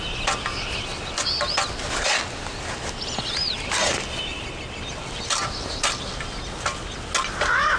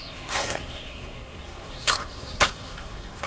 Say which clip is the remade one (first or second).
second